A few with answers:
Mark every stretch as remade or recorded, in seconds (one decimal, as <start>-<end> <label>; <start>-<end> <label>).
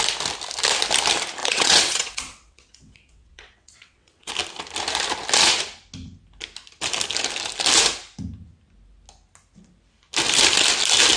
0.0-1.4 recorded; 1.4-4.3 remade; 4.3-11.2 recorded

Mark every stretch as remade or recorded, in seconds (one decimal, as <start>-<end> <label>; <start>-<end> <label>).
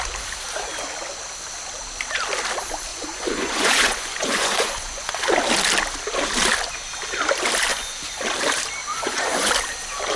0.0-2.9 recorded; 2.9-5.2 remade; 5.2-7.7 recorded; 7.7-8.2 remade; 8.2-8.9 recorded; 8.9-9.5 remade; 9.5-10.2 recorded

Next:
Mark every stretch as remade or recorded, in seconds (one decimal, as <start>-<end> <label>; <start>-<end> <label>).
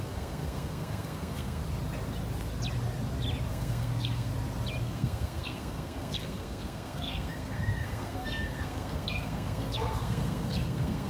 0.0-1.6 remade; 1.6-3.5 recorded; 3.5-4.3 remade; 4.3-4.8 recorded; 4.8-11.1 remade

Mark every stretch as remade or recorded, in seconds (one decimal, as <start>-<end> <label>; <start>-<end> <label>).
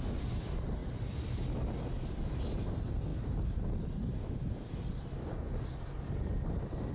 0.0-6.9 recorded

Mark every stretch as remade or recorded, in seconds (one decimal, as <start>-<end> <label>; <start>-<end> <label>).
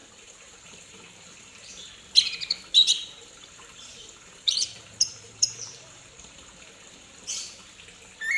0.0-1.9 remade; 1.9-2.8 recorded; 2.8-7.3 remade; 7.3-8.4 recorded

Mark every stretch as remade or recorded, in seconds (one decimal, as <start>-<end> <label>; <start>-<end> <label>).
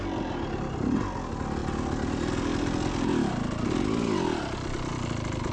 0.0-5.5 recorded